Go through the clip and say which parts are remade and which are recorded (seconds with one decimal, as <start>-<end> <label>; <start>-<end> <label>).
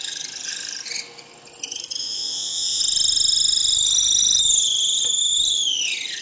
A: 0.0-2.0 recorded; 2.0-2.8 remade; 2.8-6.2 recorded